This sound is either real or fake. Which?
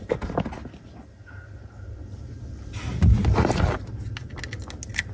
real